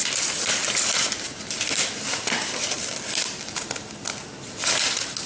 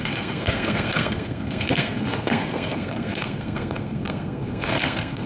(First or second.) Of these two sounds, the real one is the first